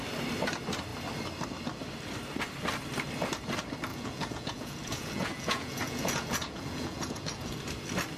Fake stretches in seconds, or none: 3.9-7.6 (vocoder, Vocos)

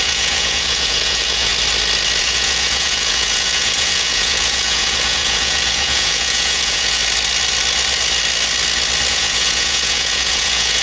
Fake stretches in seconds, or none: 0.0-1.5 (vocoder, Vocos); 2.2-7.0; 9.1-10.8

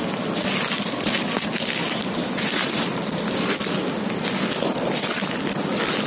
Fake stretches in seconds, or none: 1.8-3.2 (vocoder, BigVGAN v2)

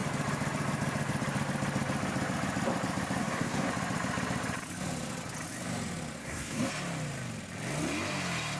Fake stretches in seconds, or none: 3.2-3.7 (codec, SNAC); 6.2-6.7

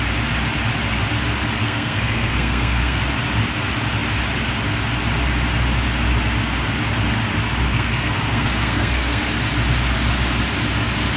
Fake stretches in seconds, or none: 1.6-3.0 (codec, SNAC); 7.7-9.3